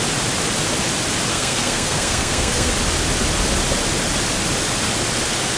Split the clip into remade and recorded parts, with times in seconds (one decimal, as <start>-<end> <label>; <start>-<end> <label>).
0.0-1.3 recorded; 1.3-2.7 remade; 2.7-5.6 recorded